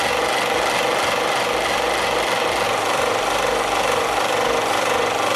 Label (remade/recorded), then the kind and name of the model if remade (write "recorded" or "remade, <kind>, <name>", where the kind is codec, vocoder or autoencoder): recorded